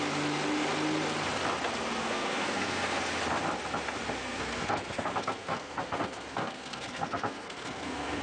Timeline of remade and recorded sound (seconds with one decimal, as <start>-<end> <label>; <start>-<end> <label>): 0.0-2.0 recorded; 2.0-3.0 remade; 3.0-4.2 recorded; 4.2-8.2 remade